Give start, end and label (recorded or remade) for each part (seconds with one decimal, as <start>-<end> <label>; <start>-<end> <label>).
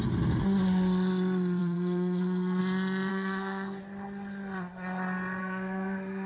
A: 0.0-1.6 recorded; 1.6-2.6 remade; 2.6-3.1 recorded; 3.1-3.8 remade; 3.8-5.4 recorded; 5.4-6.3 remade